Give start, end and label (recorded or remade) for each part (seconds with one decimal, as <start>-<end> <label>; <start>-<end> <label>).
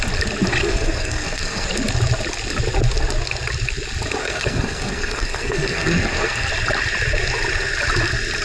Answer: 0.0-0.6 recorded; 0.6-1.7 remade; 1.7-4.2 recorded; 4.2-6.5 remade; 6.5-8.4 recorded